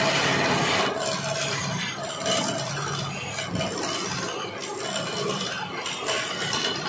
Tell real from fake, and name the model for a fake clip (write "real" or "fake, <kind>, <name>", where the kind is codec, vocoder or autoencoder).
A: real